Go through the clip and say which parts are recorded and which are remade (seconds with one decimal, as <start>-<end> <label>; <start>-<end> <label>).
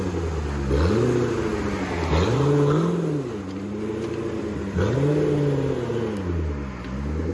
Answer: 0.0-7.3 recorded